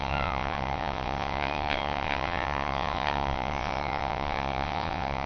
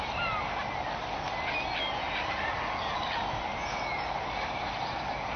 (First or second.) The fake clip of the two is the first